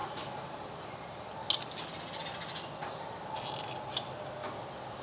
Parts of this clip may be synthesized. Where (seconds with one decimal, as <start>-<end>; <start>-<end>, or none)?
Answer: 0.0-1.3